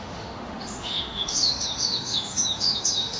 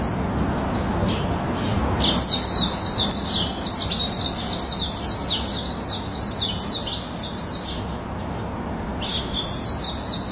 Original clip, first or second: second